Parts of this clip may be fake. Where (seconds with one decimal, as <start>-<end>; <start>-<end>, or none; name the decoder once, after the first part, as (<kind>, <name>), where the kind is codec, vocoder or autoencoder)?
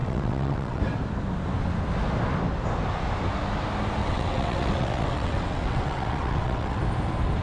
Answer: 0.0-0.8 (vocoder, WaveNeXt); 4.0-6.8